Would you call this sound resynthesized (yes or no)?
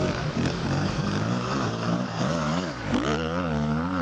yes